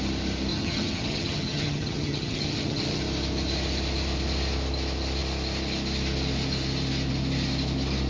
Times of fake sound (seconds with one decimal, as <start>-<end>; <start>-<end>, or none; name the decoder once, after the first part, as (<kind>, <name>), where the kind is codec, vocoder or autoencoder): 0.5-3.0 (vocoder, HiFi-GAN)